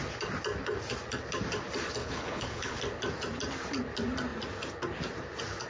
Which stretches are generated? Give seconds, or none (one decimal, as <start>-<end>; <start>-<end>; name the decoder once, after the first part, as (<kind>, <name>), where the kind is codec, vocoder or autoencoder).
2.0-2.8 (codec, HILCodec)